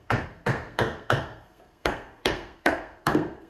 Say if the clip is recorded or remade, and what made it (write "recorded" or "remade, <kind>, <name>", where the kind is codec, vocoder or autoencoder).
remade, codec, SNAC